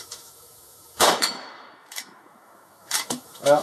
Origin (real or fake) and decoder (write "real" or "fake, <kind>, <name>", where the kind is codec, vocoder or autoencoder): fake, autoencoder, DAC-VAE